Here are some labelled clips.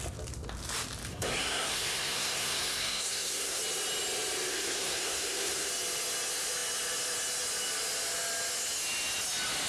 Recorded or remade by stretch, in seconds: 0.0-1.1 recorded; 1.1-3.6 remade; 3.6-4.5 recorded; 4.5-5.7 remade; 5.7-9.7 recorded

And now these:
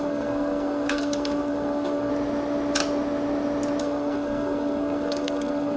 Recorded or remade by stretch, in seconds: 0.0-2.1 remade; 2.1-3.8 recorded; 3.8-5.8 remade

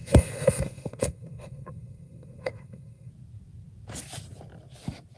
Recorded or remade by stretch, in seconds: 0.0-3.1 remade; 3.1-5.2 recorded

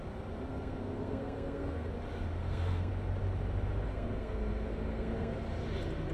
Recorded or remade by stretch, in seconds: 0.0-0.5 recorded; 0.5-1.9 remade; 1.9-2.4 recorded; 2.4-2.9 remade; 2.9-3.9 recorded; 3.9-5.4 remade; 5.4-6.1 recorded

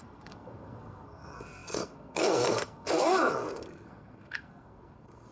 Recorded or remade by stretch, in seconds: 0.0-5.3 remade